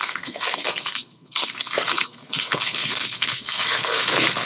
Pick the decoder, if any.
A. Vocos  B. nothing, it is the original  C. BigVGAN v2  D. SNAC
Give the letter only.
D